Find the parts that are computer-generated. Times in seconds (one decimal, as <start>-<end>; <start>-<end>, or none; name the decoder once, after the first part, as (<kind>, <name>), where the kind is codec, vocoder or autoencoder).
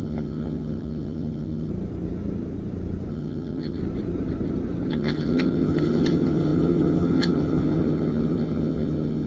0.0-1.7 (vocoder, HiFi-GAN); 3.1-3.8; 4.9-9.3